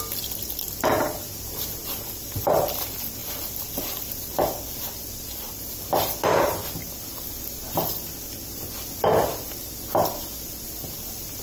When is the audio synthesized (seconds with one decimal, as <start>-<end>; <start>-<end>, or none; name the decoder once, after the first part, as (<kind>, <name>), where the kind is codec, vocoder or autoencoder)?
none